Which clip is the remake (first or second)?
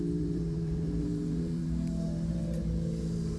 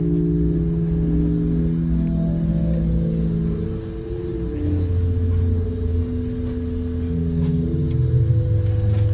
first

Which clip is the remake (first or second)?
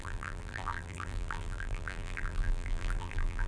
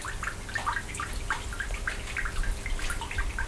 first